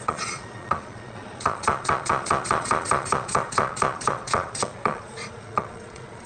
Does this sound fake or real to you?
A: fake